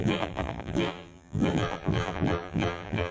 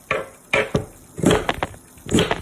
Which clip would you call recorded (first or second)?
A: second